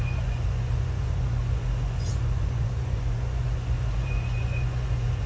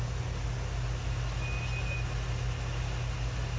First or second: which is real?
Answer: second